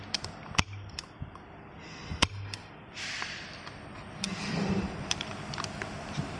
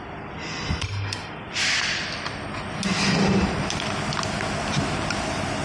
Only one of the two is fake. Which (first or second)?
first